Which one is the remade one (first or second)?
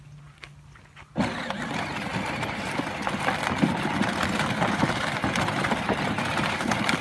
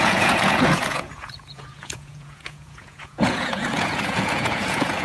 second